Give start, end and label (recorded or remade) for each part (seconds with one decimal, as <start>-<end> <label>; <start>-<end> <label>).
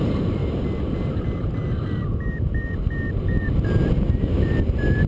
0.0-0.4 remade; 0.4-3.5 recorded; 3.5-5.1 remade